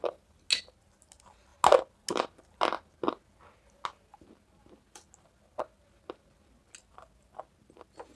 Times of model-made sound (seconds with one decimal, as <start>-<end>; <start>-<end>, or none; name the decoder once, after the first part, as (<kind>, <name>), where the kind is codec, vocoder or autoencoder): none